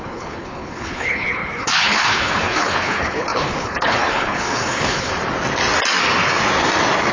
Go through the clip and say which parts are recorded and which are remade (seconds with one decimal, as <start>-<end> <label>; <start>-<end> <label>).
0.0-5.1 remade; 5.1-7.1 recorded